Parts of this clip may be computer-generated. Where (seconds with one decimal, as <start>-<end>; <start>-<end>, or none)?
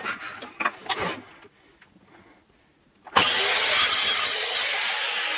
3.5-4.7